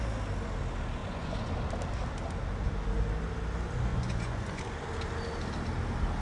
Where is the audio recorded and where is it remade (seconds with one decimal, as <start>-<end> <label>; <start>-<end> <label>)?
0.0-1.0 recorded; 1.0-1.5 remade; 1.5-3.9 recorded; 3.9-4.6 remade; 4.6-6.2 recorded